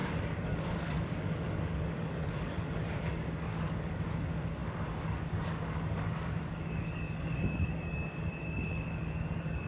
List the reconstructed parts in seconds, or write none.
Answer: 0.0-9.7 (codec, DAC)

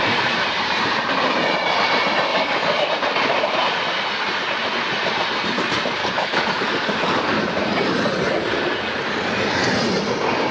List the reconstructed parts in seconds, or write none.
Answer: 2.3-2.9 (codec, DAC); 6.0-7.4

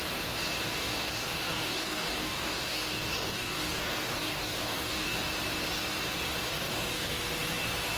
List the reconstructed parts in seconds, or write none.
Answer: 0.7-5.2 (codec, DAC); 6.4-7.3

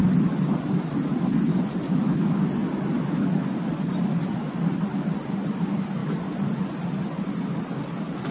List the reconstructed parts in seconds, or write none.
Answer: none

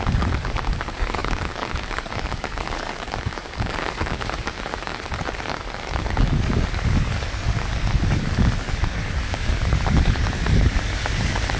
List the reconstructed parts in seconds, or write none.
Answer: 0.0-11.6 (codec, DAC)